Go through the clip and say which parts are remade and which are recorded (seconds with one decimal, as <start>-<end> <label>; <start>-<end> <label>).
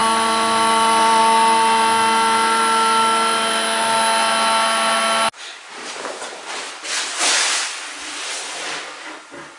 0.0-1.2 remade; 1.2-9.6 recorded